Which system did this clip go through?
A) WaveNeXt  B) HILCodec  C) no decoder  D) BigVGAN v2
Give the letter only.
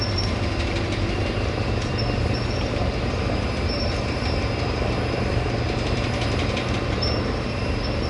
D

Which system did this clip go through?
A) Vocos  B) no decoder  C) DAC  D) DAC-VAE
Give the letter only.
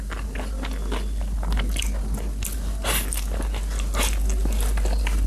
B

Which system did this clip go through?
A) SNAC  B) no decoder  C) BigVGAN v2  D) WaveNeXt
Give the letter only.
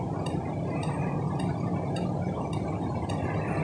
B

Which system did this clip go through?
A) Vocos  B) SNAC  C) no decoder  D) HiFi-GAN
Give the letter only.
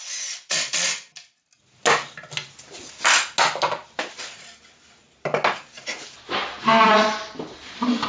C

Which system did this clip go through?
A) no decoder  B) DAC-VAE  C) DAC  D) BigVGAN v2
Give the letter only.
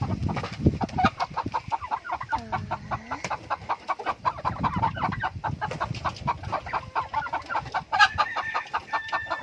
D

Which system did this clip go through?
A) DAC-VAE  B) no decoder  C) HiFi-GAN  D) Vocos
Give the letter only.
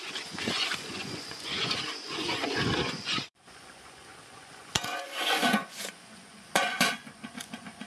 D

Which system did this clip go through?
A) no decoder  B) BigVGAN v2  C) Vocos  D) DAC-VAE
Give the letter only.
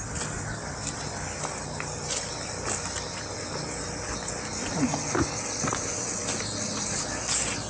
A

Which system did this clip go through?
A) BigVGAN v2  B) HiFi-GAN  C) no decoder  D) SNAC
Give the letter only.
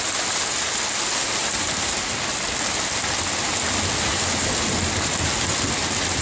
C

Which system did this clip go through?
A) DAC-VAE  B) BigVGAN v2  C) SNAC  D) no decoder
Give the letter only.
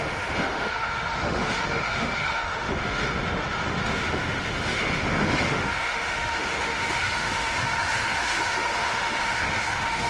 A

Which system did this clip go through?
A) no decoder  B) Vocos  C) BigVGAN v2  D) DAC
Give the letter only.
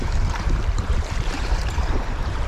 C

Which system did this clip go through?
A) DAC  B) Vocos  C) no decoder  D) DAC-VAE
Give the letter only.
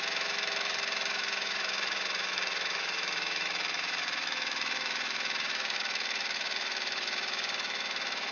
D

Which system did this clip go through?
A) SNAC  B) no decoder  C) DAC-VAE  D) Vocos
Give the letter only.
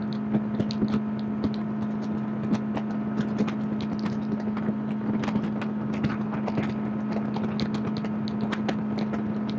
B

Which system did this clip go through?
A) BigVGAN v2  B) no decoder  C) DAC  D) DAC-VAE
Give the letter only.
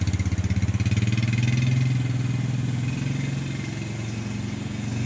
B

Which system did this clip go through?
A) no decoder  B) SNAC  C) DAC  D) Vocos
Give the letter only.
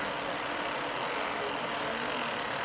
A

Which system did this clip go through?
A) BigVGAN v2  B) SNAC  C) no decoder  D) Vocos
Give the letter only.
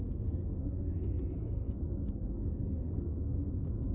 B